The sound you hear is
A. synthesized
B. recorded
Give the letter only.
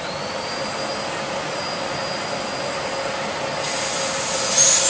B